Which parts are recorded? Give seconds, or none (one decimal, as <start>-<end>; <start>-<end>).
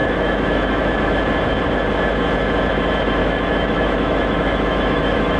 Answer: 1.2-3.2